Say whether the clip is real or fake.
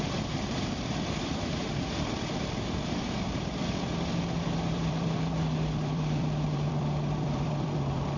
fake